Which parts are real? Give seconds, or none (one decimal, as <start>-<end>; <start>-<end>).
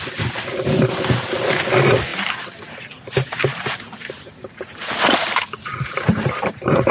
0.0-6.9